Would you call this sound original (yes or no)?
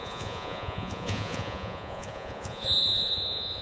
no